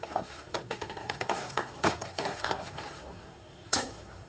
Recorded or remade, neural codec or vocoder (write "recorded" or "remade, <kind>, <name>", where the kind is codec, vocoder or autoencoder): remade, codec, SNAC